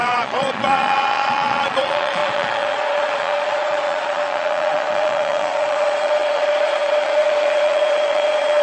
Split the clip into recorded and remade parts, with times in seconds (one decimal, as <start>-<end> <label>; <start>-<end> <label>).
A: 0.0-8.6 remade